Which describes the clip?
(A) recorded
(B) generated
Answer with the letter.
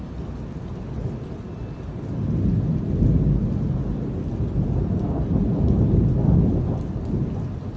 A